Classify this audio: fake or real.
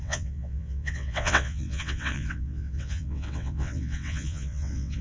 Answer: fake